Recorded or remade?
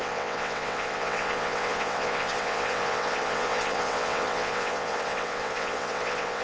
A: remade